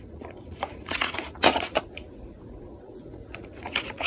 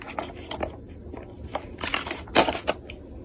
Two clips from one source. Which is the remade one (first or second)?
first